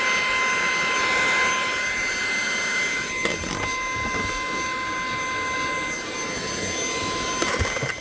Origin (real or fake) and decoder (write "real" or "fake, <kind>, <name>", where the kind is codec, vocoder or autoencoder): real